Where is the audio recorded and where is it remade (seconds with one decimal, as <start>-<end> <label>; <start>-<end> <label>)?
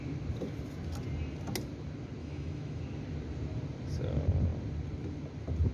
0.0-2.2 recorded; 2.2-2.8 remade; 2.8-5.7 recorded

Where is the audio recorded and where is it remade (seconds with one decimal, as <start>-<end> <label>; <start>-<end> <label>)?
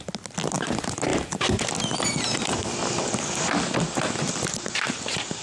0.0-5.4 recorded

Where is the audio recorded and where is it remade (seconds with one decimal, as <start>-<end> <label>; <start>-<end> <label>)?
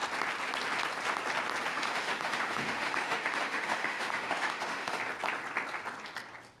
0.0-1.7 recorded; 1.7-5.0 remade; 5.0-6.6 recorded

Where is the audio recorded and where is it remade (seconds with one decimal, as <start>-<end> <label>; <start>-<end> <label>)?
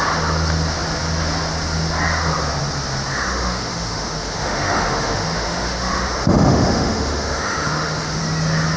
0.0-3.1 recorded; 3.1-8.2 remade; 8.2-8.8 recorded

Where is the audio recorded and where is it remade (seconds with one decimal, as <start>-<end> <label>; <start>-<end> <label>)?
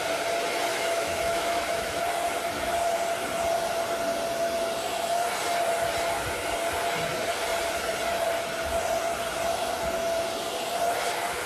0.0-0.7 recorded; 0.7-2.0 remade; 2.0-11.5 recorded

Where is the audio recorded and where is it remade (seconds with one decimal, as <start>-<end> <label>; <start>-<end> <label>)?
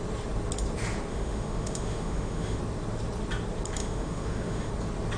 0.0-1.1 recorded; 1.1-2.6 remade; 2.6-3.8 recorded; 3.8-4.7 remade; 4.7-5.2 recorded